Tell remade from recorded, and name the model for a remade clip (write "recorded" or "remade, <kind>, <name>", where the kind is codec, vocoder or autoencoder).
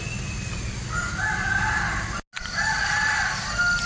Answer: recorded